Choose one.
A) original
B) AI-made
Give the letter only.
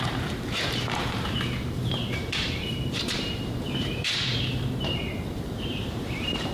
B